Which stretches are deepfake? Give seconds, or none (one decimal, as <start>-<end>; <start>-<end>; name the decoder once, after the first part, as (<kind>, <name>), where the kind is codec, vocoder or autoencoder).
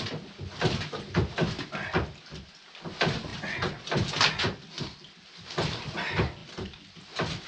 none